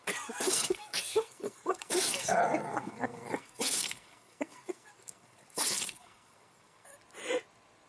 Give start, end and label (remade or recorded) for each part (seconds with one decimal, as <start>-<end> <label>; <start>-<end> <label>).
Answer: 0.0-6.9 remade; 6.9-7.9 recorded